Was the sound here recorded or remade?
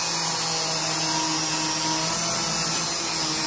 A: recorded